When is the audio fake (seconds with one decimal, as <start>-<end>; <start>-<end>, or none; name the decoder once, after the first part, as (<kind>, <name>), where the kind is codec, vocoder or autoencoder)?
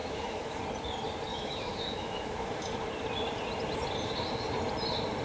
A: 0.0-0.6 (autoencoder, DAC-VAE); 1.3-2.5